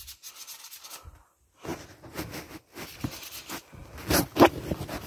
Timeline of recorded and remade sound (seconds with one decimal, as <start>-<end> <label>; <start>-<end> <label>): 0.0-5.1 recorded